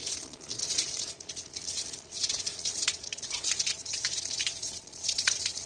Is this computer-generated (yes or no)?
yes